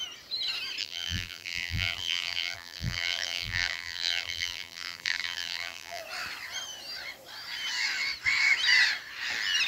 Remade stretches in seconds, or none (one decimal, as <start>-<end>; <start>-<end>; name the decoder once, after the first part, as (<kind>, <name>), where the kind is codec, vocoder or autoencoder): 0.8-6.0 (vocoder, BigVGAN v2)